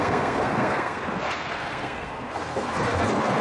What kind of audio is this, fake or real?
fake